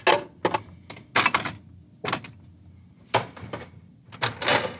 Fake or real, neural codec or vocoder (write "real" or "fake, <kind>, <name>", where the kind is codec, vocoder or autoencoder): real